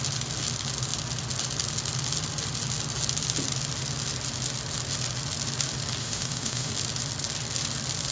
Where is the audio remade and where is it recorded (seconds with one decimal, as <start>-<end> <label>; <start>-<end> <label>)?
0.0-6.0 recorded; 6.0-6.7 remade; 6.7-8.1 recorded